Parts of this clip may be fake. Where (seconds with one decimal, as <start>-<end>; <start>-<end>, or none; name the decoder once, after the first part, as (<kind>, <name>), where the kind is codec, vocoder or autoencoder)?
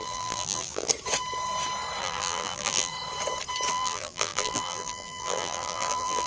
0.0-0.9 (vocoder, BigVGAN v2); 2.0-2.9; 3.7-6.3